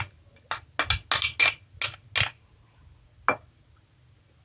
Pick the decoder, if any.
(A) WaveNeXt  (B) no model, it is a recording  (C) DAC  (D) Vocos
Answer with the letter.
B